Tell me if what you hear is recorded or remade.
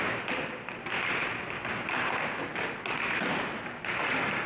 recorded